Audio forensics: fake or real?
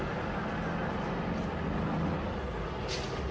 real